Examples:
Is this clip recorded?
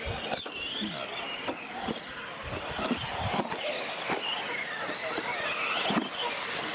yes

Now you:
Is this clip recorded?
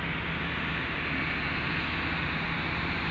yes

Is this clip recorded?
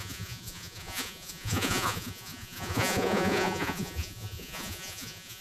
no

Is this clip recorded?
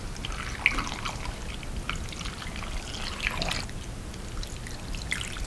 yes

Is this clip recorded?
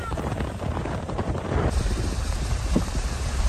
no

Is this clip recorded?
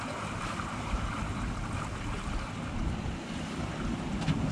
yes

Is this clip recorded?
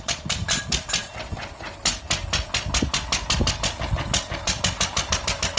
yes